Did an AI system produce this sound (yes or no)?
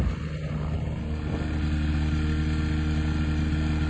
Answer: no